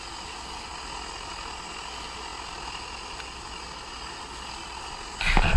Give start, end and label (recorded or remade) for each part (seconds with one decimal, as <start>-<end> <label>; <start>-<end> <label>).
0.0-5.6 recorded